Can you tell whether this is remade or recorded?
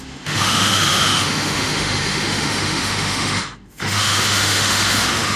remade